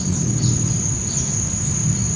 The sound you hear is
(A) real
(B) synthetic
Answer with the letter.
B